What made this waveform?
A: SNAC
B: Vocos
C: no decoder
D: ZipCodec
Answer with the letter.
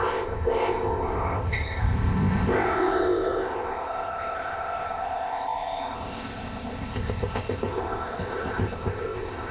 D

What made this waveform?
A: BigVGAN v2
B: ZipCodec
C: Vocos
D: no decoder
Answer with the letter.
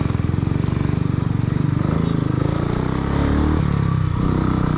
D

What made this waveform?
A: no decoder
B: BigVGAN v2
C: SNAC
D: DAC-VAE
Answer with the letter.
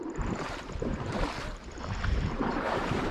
B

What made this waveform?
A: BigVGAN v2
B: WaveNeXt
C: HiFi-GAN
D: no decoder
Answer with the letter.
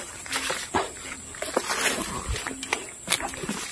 D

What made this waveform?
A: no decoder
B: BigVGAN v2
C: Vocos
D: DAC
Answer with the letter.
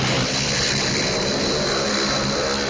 A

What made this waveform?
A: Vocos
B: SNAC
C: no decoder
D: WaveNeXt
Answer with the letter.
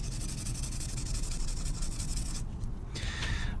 D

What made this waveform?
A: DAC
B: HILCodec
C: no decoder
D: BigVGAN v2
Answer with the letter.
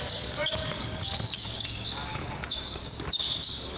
A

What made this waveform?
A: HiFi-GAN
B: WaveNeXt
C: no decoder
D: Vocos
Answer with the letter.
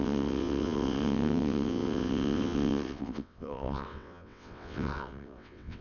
B